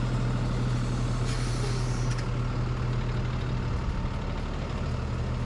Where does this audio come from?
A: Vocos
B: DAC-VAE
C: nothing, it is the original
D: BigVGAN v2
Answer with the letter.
C